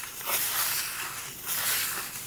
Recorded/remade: recorded